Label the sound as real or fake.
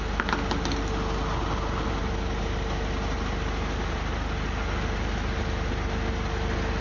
real